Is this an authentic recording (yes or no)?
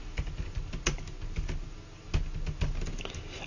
yes